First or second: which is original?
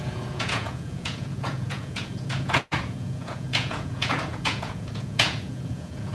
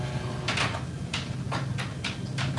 second